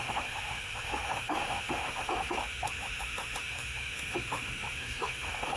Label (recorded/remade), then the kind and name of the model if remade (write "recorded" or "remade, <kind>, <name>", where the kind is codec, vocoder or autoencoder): remade, autoencoder, DAC-VAE